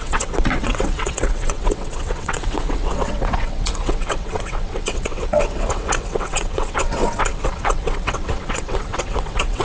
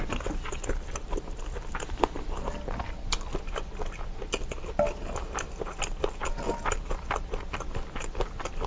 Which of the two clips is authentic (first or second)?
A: second